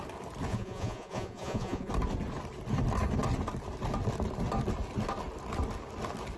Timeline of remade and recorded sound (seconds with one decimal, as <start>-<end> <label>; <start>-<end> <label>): 0.0-0.5 recorded; 0.5-1.9 remade; 1.9-6.4 recorded